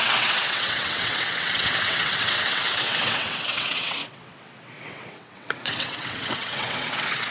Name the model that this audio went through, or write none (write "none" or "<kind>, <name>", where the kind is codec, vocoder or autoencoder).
vocoder, WaveNeXt